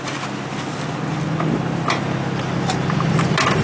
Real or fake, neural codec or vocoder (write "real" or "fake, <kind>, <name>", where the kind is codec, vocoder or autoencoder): real